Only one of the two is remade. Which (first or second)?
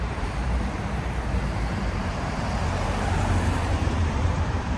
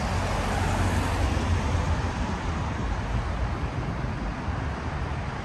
first